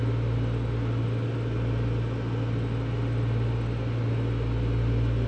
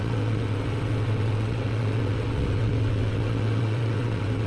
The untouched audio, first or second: first